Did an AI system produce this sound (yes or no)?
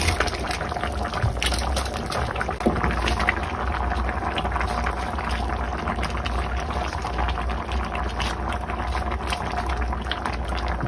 no